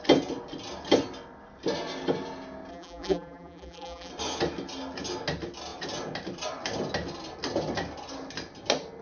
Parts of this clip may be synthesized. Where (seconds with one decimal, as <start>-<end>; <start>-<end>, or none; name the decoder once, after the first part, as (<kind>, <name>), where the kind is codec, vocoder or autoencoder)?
2.7-4.1 (vocoder, BigVGAN v2)